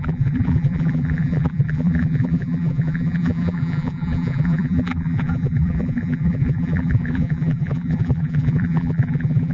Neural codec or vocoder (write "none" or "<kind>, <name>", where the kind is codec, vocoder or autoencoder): vocoder, BigVGAN v2